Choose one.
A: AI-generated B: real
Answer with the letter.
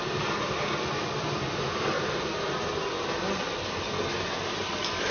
B